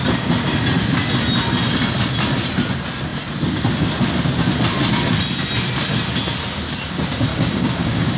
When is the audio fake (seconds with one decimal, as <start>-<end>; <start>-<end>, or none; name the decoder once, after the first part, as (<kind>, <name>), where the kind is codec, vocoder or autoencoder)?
7.3-8.2 (codec, DAC)